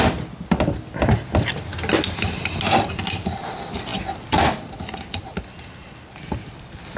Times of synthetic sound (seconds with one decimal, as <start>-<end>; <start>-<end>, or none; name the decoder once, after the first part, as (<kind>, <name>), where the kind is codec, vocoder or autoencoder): none